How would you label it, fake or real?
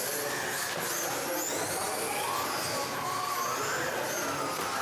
real